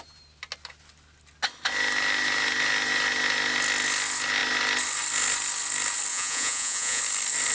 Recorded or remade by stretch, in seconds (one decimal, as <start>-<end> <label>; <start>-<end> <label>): 0.0-6.1 recorded; 6.1-7.0 remade; 7.0-7.5 recorded